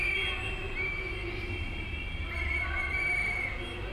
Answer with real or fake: real